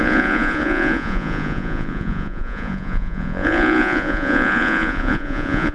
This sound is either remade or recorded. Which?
remade